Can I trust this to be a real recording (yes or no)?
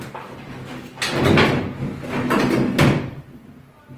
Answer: yes